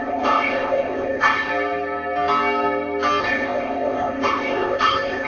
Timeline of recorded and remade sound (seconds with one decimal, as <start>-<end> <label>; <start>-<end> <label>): 0.0-1.5 remade; 1.5-3.2 recorded; 3.2-5.3 remade